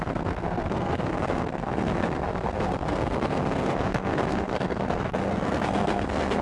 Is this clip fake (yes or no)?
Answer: yes